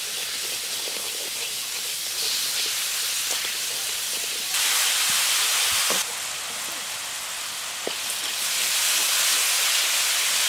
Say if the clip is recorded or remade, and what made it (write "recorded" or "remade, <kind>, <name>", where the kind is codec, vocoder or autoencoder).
recorded